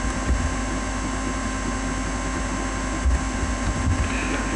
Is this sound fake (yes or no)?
no